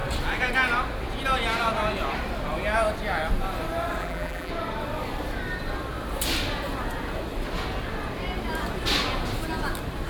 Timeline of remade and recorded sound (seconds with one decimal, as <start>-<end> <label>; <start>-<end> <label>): 0.0-4.0 recorded; 4.0-4.5 remade; 4.5-10.1 recorded